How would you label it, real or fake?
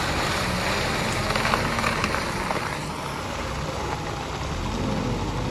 real